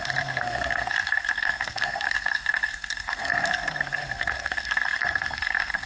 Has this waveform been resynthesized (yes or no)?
yes